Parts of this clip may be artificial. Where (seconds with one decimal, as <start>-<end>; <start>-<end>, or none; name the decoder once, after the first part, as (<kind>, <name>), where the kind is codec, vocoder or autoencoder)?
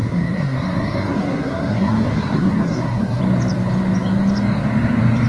0.0-3.2 (codec, SNAC)